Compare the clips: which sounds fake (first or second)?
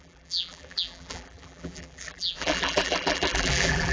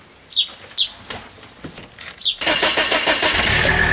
first